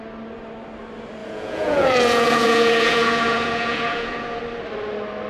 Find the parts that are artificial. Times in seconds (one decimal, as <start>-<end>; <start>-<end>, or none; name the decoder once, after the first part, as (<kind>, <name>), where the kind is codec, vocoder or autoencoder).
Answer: 1.2-4.4 (vocoder, Vocos)